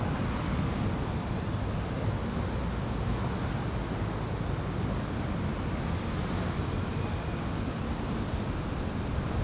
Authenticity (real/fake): real